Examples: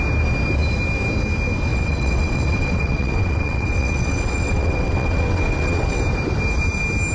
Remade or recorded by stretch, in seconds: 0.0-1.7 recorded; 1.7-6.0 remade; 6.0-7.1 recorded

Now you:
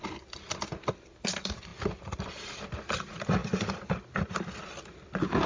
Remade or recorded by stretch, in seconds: 0.0-5.5 recorded

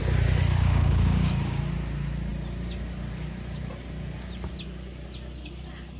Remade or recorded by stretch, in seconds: 0.0-0.5 recorded; 0.5-1.6 remade; 1.6-6.0 recorded

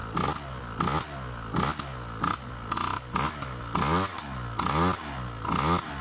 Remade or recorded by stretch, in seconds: 0.0-6.0 recorded